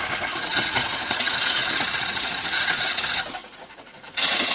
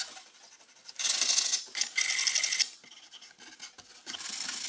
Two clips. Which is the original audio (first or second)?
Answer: second